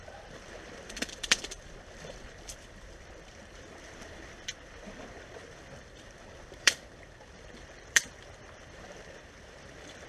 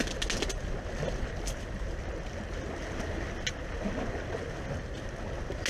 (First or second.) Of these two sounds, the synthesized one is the first